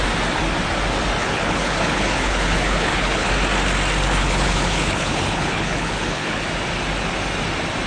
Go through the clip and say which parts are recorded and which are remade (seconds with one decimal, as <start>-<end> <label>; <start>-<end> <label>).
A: 0.0-1.2 recorded; 1.2-3.3 remade; 3.3-4.2 recorded; 4.2-6.4 remade; 6.4-7.9 recorded